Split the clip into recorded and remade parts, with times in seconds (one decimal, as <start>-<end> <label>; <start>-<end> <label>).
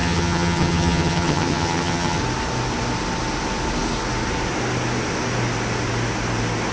0.0-2.2 remade; 2.2-6.7 recorded